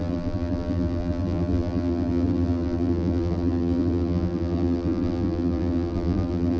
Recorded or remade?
remade